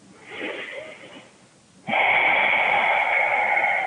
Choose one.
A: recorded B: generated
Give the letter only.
A